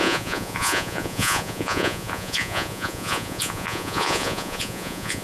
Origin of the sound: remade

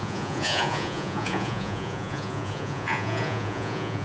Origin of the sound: remade